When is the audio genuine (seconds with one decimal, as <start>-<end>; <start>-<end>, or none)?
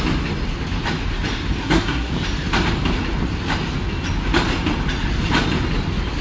0.0-1.6; 2.1-6.2